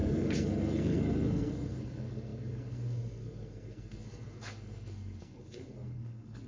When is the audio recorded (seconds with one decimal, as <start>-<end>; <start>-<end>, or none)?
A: none